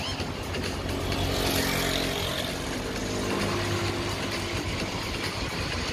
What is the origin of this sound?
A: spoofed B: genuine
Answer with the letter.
B